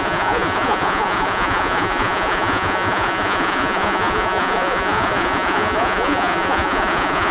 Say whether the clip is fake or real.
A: fake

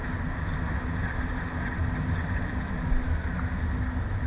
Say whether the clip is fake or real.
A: real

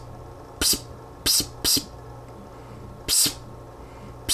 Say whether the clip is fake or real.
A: real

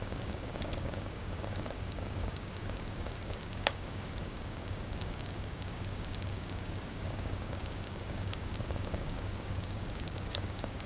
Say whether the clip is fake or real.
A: fake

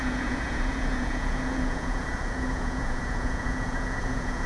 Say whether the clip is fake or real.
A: fake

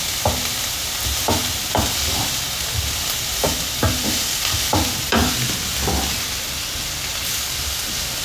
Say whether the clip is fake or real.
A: real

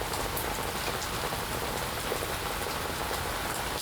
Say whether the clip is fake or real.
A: real